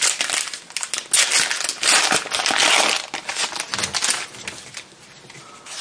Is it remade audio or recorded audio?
recorded